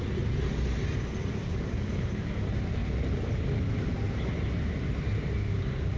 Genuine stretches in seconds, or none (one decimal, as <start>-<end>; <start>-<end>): 0.0-1.3; 2.0-5.4